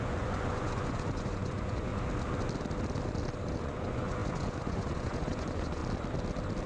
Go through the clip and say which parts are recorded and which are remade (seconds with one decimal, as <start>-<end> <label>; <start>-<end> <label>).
0.0-1.9 remade; 1.9-3.6 recorded; 3.6-5.8 remade; 5.8-6.7 recorded